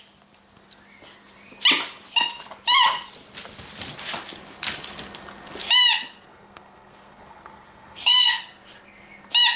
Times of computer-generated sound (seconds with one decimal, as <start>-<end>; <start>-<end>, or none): 6.3-8.4